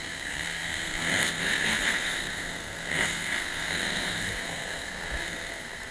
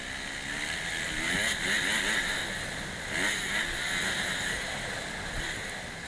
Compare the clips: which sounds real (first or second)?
second